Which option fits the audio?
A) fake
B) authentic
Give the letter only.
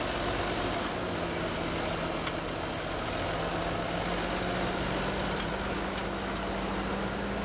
B